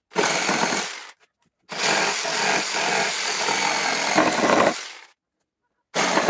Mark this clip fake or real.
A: real